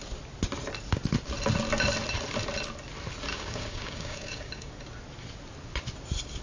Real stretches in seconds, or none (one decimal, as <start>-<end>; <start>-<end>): 0.0-3.3; 4.7-6.4